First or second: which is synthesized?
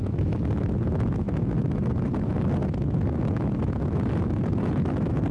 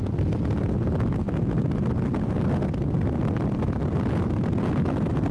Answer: first